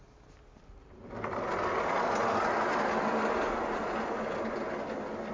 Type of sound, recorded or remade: recorded